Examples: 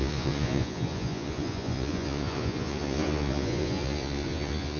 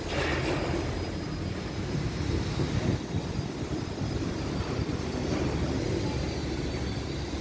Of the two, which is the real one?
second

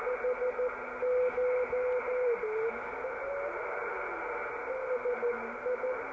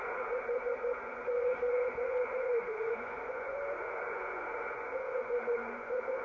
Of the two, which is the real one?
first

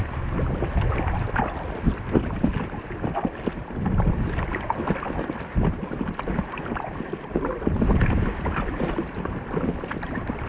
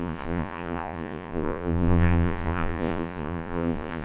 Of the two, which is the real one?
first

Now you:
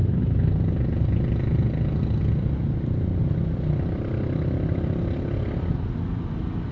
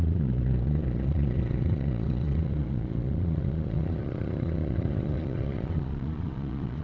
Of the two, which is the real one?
first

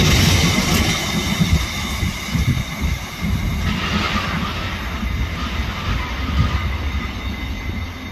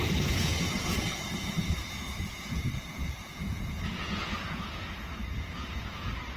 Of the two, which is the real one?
first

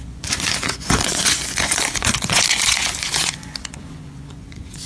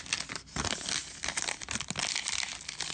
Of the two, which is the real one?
second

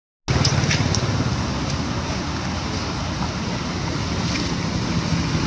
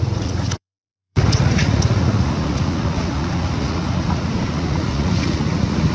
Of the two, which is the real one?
first